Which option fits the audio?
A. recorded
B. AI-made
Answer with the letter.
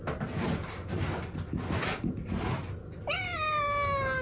A